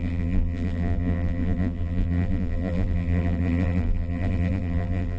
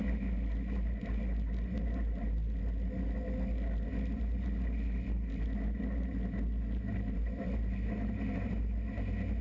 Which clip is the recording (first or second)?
second